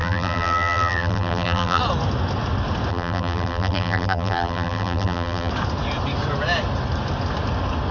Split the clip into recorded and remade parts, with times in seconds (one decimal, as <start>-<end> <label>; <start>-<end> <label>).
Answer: 0.0-1.8 remade; 1.8-2.9 recorded; 2.9-5.5 remade; 5.5-7.9 recorded

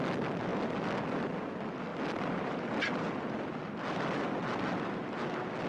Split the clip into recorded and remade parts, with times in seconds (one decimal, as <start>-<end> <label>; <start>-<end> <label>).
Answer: 0.0-5.7 recorded

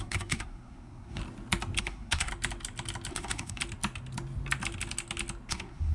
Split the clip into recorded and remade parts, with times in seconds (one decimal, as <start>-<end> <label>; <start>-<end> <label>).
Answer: 0.0-1.2 remade; 1.2-1.8 recorded; 1.8-2.3 remade; 2.3-3.1 recorded; 3.1-3.6 remade; 3.6-5.5 recorded; 5.5-5.9 remade

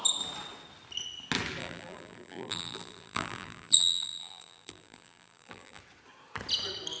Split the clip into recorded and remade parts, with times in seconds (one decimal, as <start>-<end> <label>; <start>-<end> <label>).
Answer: 0.0-1.6 recorded; 1.6-5.8 remade; 5.8-7.0 recorded

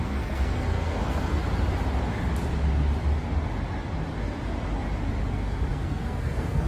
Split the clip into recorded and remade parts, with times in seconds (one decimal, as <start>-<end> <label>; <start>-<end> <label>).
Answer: 0.0-1.4 remade; 1.4-5.3 recorded; 5.3-6.7 remade

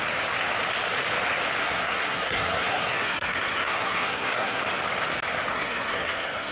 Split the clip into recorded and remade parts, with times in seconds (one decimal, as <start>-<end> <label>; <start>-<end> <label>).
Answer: 0.0-1.6 recorded; 1.6-4.6 remade; 4.6-5.5 recorded; 5.5-6.5 remade

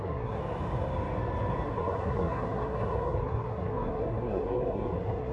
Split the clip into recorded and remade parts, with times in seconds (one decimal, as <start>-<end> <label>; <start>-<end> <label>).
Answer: 0.0-0.4 remade; 0.4-1.7 recorded; 1.7-5.3 remade